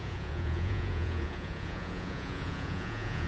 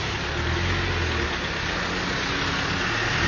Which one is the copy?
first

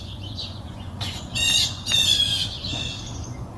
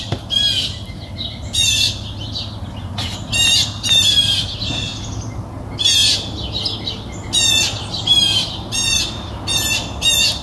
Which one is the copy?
first